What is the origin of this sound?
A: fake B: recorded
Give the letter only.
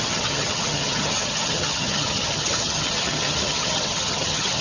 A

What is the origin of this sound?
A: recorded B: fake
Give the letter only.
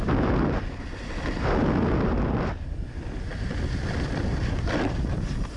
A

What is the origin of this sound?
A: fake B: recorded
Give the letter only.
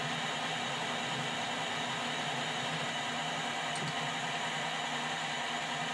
B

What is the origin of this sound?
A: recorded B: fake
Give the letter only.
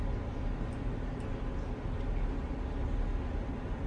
A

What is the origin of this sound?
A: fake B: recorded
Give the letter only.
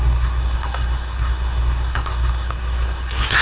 A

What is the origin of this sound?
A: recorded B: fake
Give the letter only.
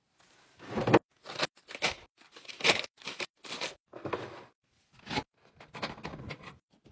A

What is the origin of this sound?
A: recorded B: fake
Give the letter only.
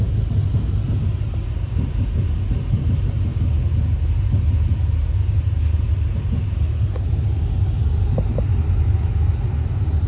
A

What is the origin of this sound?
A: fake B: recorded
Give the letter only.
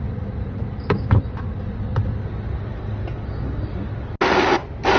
B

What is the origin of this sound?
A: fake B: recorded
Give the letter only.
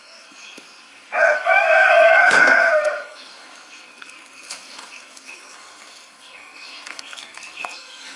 A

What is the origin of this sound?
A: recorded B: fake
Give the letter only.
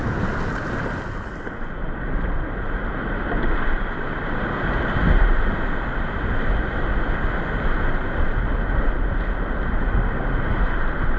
A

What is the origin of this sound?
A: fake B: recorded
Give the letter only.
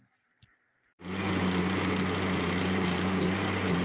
B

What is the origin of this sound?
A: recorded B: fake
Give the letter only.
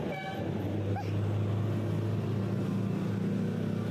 A